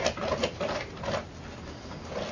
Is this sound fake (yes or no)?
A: no